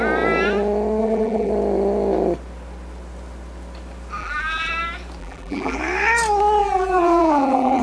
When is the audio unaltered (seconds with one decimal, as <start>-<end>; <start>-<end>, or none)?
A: 0.0-1.0; 1.5-4.2; 4.7-5.2; 5.8-6.6